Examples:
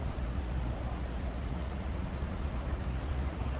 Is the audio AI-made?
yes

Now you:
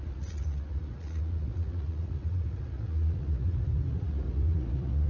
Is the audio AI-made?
yes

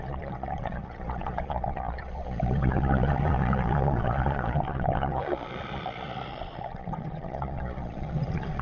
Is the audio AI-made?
yes